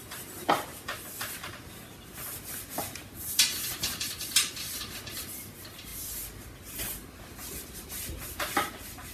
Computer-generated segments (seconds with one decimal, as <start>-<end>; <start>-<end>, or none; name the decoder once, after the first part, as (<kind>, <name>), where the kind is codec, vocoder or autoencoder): none